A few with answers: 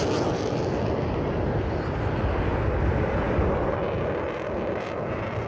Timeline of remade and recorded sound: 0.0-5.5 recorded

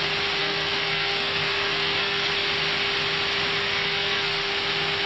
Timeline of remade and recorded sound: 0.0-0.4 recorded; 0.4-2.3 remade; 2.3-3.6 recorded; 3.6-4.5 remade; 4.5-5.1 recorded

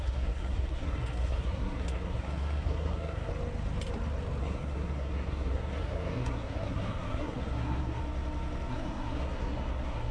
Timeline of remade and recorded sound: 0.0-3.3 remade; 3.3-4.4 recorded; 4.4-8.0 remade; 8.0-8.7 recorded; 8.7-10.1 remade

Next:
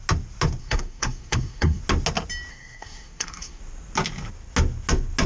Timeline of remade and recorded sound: 0.0-0.6 recorded; 0.6-1.8 remade; 1.8-2.5 recorded; 2.5-3.6 remade; 3.6-5.3 recorded